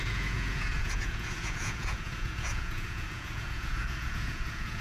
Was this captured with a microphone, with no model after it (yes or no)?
no